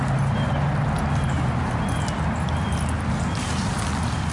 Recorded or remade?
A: recorded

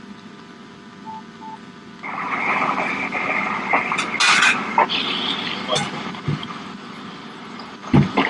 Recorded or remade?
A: recorded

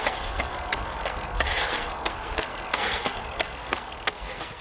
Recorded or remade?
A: remade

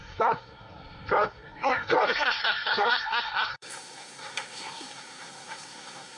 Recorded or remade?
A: remade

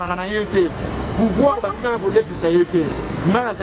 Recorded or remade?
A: remade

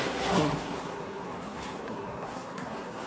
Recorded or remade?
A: remade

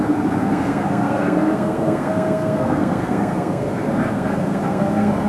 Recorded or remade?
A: remade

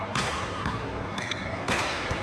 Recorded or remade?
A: remade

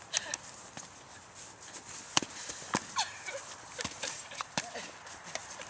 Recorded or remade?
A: recorded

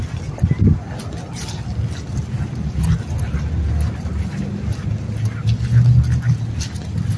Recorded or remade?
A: recorded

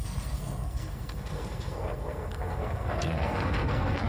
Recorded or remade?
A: remade